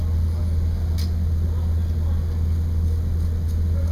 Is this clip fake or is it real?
real